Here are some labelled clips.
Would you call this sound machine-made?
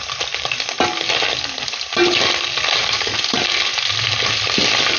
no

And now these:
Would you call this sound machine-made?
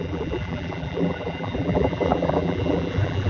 yes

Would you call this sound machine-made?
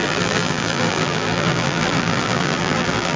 yes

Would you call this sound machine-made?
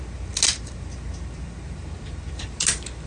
no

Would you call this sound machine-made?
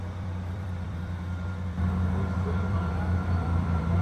yes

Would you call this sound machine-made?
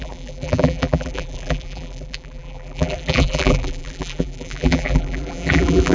yes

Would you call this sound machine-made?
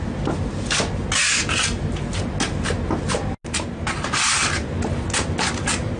no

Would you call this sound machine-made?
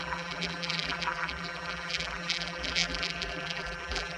yes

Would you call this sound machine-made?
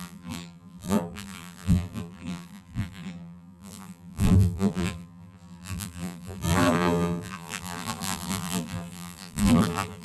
yes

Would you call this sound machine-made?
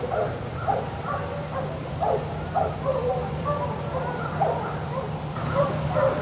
yes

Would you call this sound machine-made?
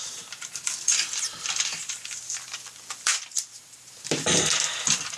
yes